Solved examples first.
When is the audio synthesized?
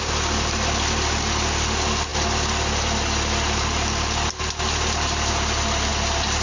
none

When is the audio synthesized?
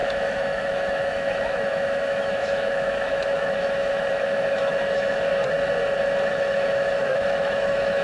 0.0-5.3 (autoencoder, DAC-VAE); 6.3-8.0